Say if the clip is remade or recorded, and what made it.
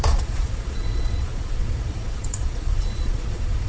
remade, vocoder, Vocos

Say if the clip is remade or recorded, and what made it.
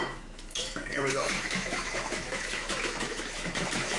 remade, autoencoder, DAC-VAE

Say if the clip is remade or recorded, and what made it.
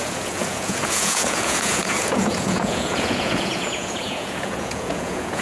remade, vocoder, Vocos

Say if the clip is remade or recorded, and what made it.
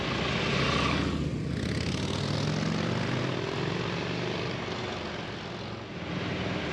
recorded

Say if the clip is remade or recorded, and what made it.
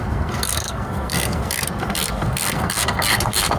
remade, codec, SNAC